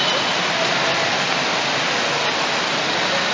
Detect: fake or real real